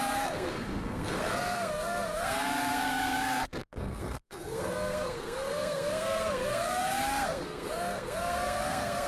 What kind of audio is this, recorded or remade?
remade